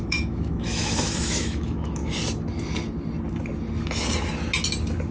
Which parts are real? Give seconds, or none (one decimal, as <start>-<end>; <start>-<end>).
2.0-5.1